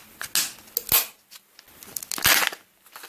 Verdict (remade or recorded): recorded